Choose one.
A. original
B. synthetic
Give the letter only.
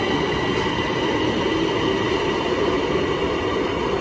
A